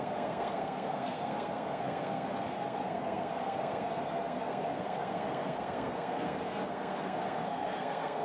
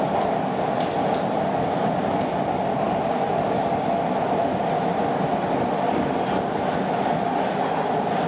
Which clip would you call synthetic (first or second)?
first